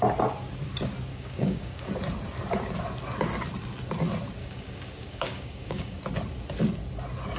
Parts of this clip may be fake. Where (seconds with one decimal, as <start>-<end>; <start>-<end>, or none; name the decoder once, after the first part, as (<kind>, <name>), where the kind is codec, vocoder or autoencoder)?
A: 1.1-1.9 (codec, DAC); 4.4-6.0